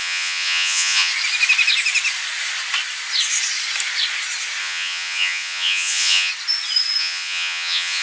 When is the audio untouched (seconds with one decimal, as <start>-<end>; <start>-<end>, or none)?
1.1-4.6; 6.3-7.0

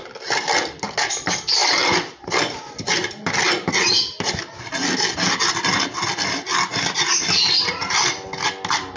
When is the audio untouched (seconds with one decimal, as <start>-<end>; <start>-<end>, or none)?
0.0-9.0

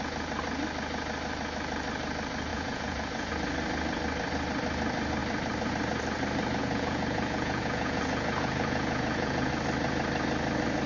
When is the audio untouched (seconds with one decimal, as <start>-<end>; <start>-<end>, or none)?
0.0-2.5; 3.3-6.6; 9.5-10.9